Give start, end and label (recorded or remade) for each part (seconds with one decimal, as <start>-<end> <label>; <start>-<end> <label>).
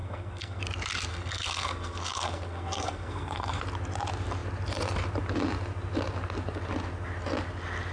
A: 0.0-0.6 remade; 0.6-1.1 recorded; 1.1-3.6 remade; 3.6-7.9 recorded